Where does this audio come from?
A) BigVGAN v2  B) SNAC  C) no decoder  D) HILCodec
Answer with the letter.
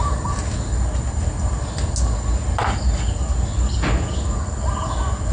C